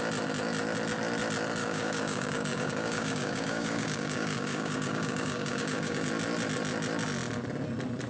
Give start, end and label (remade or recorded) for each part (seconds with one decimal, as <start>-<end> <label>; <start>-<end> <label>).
0.0-1.6 recorded; 1.6-6.1 remade; 6.1-8.1 recorded